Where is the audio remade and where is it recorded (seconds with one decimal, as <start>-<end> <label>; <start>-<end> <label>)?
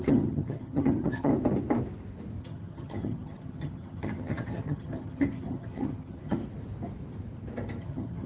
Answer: 0.0-1.3 remade; 1.3-2.4 recorded; 2.4-6.4 remade; 6.4-7.8 recorded; 7.8-8.3 remade